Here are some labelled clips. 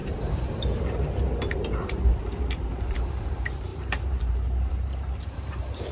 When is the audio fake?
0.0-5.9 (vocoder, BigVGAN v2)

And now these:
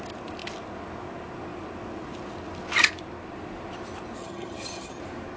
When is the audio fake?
4.2-5.0 (vocoder, HiFi-GAN)